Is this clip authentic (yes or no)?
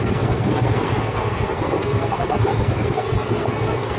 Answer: no